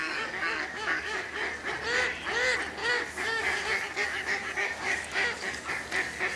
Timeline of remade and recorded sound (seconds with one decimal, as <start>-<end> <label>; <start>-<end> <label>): 0.0-1.7 remade; 1.7-2.8 recorded; 2.8-5.7 remade; 5.7-6.4 recorded